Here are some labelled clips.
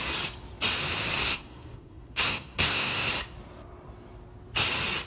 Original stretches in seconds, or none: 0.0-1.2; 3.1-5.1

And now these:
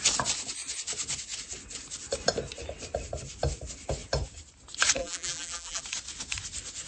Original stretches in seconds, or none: 0.0-5.0; 5.8-6.9

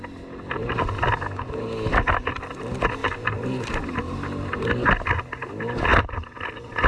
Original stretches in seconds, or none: 0.0-3.0; 3.7-5.9

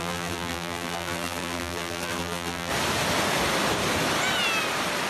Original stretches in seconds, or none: 2.7-5.1